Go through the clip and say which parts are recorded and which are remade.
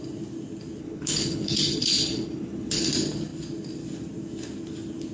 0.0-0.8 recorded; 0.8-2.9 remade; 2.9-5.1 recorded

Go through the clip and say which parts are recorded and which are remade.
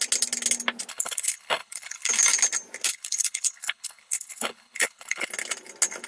0.0-0.9 recorded; 0.9-2.1 remade; 2.1-2.9 recorded; 2.9-5.3 remade; 5.3-6.1 recorded